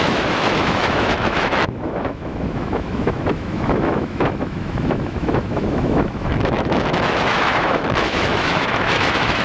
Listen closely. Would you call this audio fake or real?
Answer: fake